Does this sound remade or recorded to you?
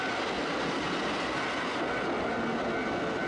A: recorded